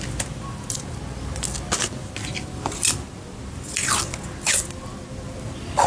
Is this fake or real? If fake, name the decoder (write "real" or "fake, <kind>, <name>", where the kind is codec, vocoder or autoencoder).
real